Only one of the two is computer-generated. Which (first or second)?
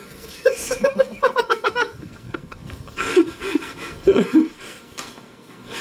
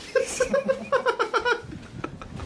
first